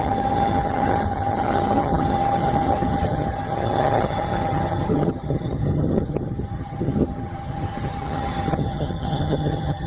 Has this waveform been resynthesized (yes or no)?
yes